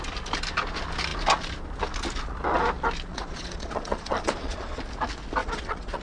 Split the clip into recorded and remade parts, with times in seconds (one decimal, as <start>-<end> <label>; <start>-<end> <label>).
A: 0.0-3.1 recorded; 3.1-4.8 remade; 4.8-5.4 recorded; 5.4-6.0 remade